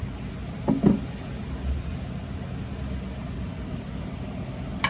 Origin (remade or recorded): recorded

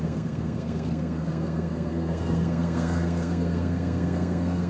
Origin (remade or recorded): remade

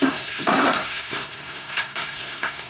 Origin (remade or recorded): remade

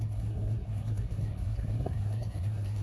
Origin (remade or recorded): remade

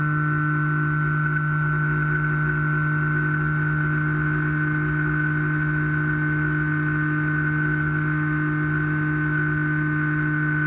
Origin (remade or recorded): recorded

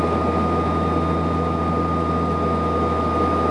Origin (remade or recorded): recorded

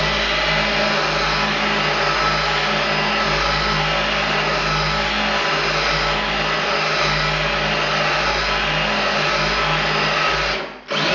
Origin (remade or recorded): recorded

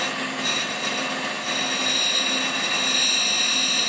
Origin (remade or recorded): recorded